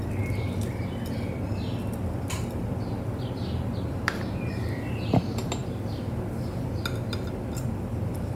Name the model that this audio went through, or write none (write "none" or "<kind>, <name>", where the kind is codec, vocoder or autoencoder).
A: none